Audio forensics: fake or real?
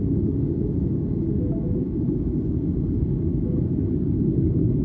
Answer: fake